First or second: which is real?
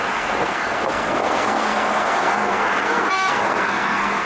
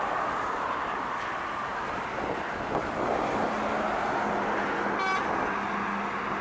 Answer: second